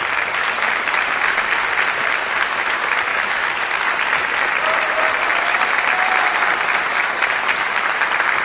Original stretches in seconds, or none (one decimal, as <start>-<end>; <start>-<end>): 0.0-3.1; 3.7-8.4